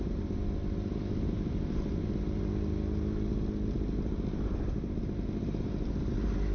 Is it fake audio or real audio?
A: real